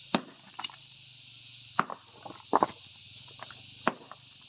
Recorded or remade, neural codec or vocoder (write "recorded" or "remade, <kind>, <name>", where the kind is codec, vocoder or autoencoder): recorded